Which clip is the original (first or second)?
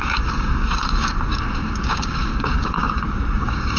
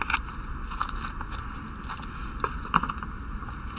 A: second